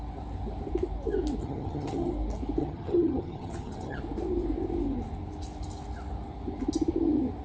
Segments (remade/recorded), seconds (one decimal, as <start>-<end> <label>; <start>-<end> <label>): 0.0-1.4 recorded; 1.4-2.1 remade; 2.1-2.6 recorded; 2.6-4.0 remade; 4.0-7.4 recorded